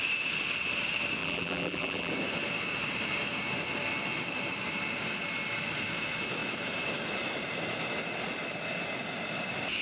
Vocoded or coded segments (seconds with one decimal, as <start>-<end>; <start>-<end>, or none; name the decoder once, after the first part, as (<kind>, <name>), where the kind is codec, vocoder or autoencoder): 1.2-2.1 (vocoder, BigVGAN v2)